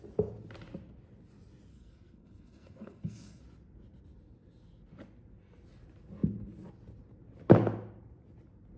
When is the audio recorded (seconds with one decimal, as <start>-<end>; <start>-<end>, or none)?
0.0-1.7; 3.4-8.8